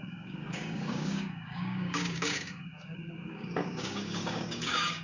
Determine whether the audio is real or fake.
fake